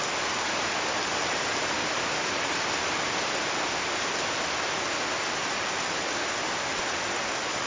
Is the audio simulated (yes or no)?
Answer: no